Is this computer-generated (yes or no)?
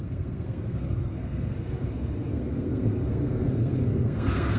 yes